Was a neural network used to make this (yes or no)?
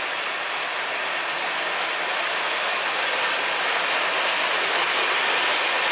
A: no